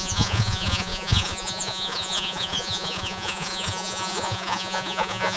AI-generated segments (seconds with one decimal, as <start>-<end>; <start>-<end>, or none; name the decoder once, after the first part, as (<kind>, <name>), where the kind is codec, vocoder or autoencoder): 0.0-5.4 (vocoder, Vocos)